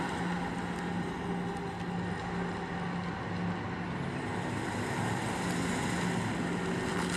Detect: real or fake real